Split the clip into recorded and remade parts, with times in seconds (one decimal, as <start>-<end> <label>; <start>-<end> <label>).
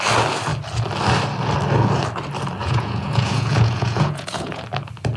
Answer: 0.0-2.6 recorded; 2.6-4.6 remade; 4.6-5.2 recorded